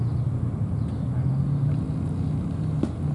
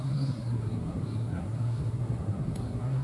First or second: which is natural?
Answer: first